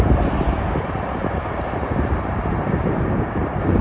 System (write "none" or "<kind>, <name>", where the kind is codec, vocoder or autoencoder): vocoder, BigVGAN v2